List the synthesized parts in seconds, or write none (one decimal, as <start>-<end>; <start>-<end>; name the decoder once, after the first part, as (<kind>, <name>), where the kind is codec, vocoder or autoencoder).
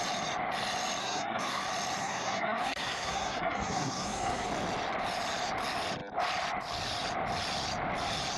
1.0-1.6 (codec, SNAC); 2.0-4.5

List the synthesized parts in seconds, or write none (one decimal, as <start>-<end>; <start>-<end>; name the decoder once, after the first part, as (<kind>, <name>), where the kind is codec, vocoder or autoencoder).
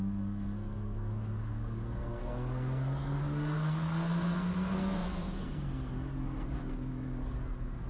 0.0-7.9 (codec, SNAC)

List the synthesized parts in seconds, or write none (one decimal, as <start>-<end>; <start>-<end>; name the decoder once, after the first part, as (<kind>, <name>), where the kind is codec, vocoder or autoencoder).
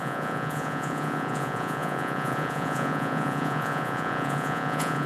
0.0-5.1 (vocoder, Vocos)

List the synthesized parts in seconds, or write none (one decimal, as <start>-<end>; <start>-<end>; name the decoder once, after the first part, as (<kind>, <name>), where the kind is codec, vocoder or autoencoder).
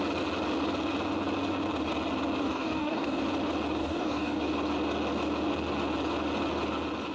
2.4-3.2 (codec, DAC); 3.8-4.4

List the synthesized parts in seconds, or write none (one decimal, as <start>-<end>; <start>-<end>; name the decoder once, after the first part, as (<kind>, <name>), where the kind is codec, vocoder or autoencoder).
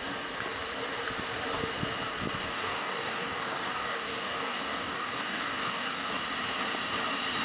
2.4-6.1 (codec, DAC)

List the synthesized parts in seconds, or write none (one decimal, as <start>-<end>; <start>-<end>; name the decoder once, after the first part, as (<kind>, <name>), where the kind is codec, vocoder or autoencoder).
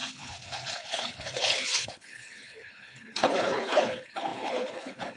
0.0-5.2 (codec, HILCodec)